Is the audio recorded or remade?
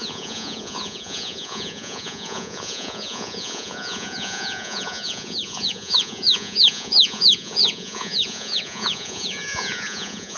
remade